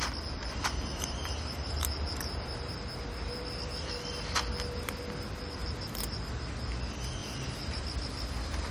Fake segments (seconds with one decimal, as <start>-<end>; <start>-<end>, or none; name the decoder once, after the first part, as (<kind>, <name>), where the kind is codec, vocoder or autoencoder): 0.4-2.7 (vocoder, BigVGAN v2); 5.6-6.3; 7.2-7.8